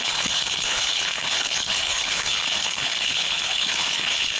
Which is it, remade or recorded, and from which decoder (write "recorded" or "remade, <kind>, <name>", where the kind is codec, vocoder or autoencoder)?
remade, codec, HILCodec